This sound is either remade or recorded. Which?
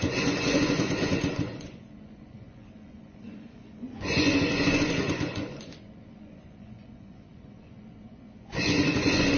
remade